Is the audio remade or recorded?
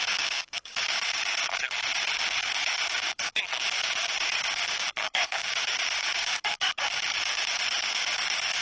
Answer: remade